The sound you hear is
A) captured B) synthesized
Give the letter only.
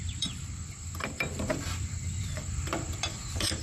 B